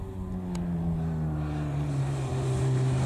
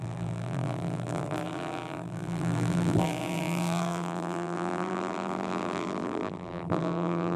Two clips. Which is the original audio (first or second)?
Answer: first